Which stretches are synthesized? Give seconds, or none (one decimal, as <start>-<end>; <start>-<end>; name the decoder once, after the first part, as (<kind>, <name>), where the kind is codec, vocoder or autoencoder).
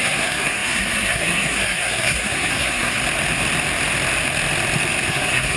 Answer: 0.0-3.0 (codec, SNAC); 5.1-5.6